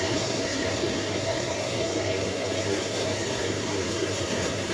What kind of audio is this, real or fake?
fake